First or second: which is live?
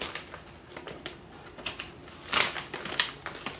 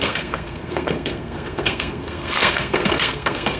first